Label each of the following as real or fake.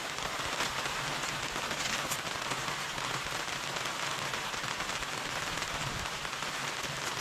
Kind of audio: real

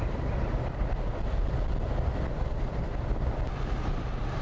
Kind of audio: fake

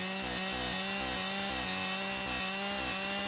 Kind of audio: real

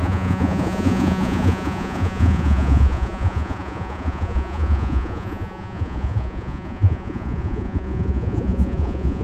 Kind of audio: fake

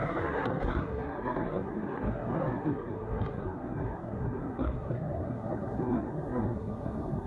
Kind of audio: fake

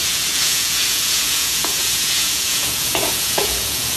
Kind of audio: fake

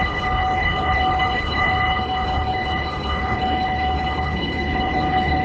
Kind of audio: fake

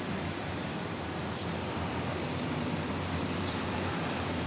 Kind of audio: fake